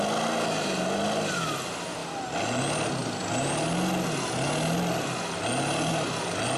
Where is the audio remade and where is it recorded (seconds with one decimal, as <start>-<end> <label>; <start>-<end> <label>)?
0.0-6.6 recorded